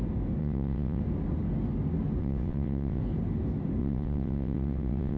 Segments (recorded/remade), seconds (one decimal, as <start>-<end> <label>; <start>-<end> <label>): 0.0-0.4 recorded; 0.4-1.0 remade; 1.0-2.2 recorded; 2.2-3.0 remade; 3.0-3.8 recorded; 3.8-5.2 remade